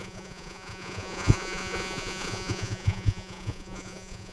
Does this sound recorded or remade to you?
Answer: remade